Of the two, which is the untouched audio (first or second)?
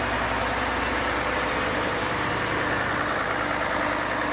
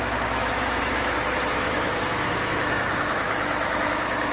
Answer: first